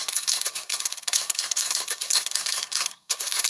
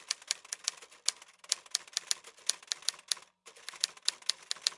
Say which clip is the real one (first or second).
second